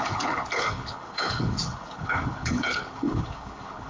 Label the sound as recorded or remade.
remade